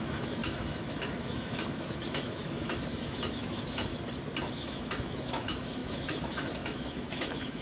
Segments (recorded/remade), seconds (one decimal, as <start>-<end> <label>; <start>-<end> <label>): 0.0-3.9 remade; 3.9-4.5 recorded; 4.5-7.6 remade